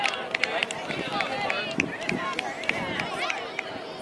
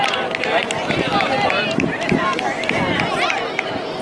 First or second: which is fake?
second